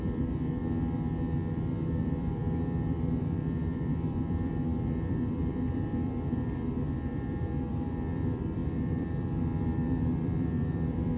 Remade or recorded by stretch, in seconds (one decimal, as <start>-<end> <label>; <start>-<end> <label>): 0.0-0.6 remade; 0.6-2.0 recorded; 2.0-11.2 remade